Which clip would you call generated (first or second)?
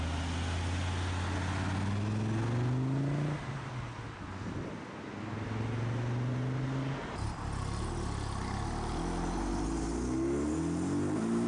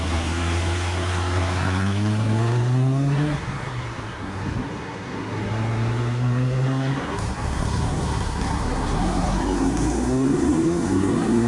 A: second